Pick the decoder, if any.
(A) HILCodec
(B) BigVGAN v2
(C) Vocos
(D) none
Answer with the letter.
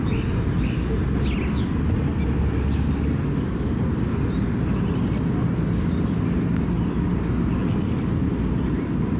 D